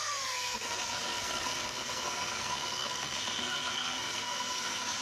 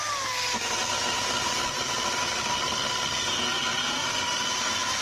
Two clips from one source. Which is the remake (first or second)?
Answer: first